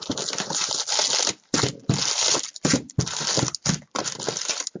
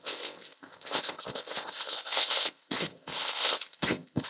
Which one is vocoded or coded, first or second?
second